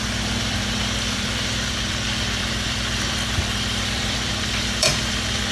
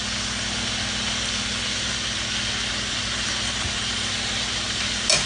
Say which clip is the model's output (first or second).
first